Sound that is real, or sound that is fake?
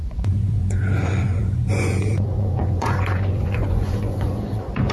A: fake